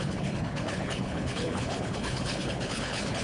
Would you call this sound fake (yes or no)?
yes